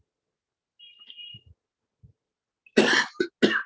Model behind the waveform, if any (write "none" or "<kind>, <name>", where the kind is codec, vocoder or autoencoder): none